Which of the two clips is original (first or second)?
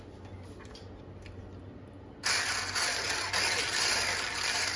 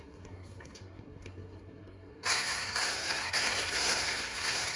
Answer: first